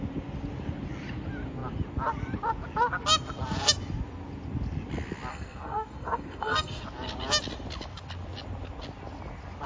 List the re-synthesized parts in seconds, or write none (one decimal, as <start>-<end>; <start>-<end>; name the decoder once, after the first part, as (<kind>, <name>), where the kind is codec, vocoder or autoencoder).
5.3-6.8 (codec, SNAC)